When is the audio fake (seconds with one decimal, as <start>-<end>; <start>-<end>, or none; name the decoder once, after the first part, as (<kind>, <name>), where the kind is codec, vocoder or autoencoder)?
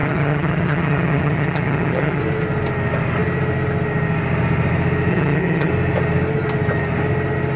0.0-2.2 (vocoder, HiFi-GAN); 5.1-5.7